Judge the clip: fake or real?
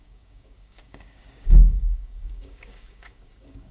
fake